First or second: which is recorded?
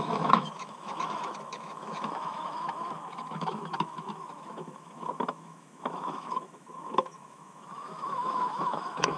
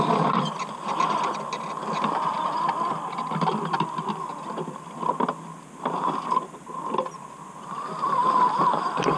second